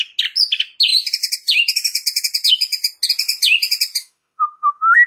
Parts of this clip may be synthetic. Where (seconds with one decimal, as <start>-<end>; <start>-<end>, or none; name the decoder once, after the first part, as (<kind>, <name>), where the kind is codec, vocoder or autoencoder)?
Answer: 4.0-5.1 (autoencoder, DAC-VAE)